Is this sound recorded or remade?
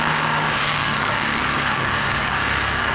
remade